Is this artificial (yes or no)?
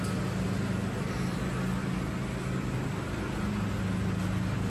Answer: no